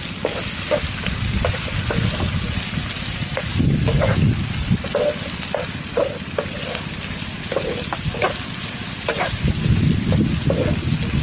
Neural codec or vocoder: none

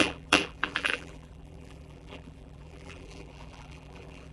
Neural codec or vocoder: vocoder, BigVGAN v2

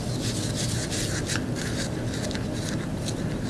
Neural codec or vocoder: none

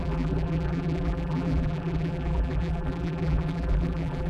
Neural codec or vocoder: vocoder, BigVGAN v2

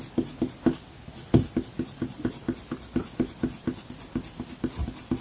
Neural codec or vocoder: none